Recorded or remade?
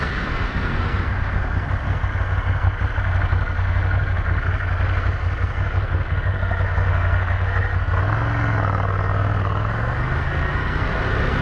remade